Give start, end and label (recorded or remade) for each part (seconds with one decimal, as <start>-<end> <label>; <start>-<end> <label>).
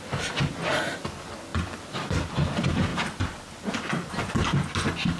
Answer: 0.0-1.5 recorded; 1.5-2.3 remade; 2.3-2.9 recorded; 2.9-4.3 remade; 4.3-5.2 recorded